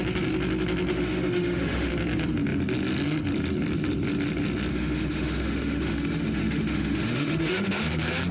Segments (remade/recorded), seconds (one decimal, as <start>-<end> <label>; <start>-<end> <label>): 0.0-0.9 recorded; 0.9-1.9 remade; 1.9-4.7 recorded; 4.7-7.9 remade; 7.9-8.3 recorded